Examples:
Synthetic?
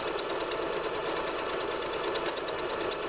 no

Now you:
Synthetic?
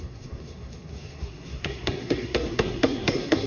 yes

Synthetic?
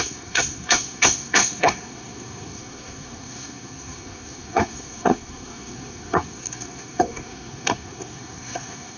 yes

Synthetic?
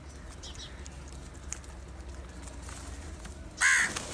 no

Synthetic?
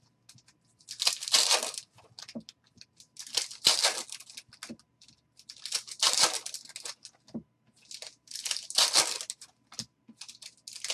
no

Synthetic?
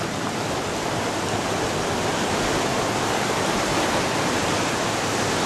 no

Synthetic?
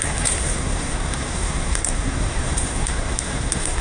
yes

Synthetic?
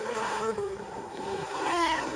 yes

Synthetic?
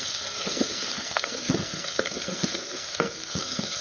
yes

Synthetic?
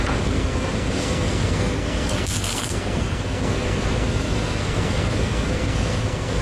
yes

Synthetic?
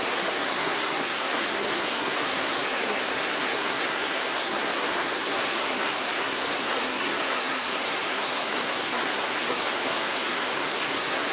yes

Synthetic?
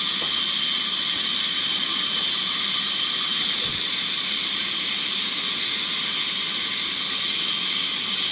no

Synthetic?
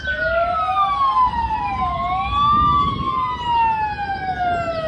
no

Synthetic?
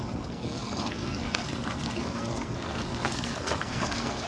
yes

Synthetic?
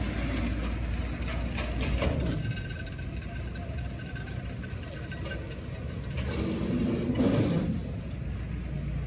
no